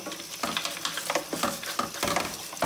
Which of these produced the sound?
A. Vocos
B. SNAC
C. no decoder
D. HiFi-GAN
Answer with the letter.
C